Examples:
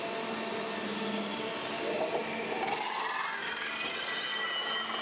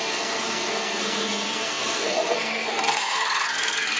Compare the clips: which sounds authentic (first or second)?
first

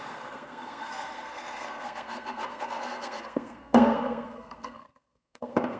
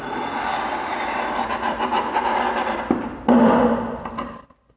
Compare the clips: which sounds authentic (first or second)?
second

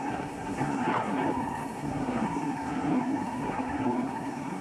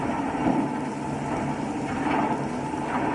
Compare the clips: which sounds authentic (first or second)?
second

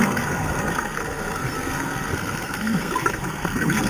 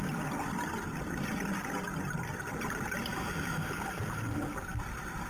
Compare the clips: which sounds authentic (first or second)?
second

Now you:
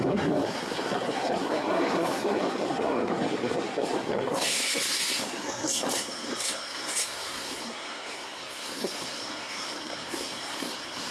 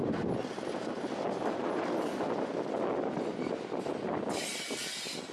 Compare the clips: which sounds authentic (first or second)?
second